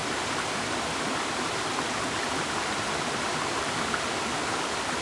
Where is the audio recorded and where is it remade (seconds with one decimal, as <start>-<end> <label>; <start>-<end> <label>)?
0.0-3.0 recorded; 3.0-5.0 remade